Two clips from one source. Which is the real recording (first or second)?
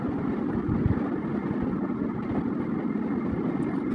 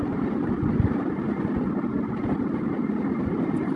first